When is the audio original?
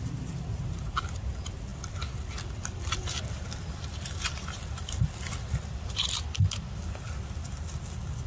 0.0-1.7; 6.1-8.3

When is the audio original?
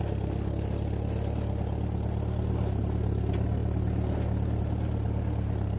0.0-5.8